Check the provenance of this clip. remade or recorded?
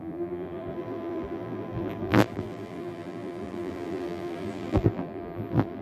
remade